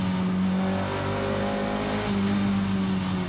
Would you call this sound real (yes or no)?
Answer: yes